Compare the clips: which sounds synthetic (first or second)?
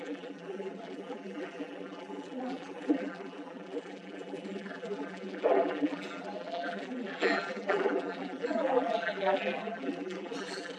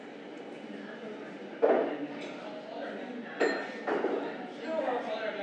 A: first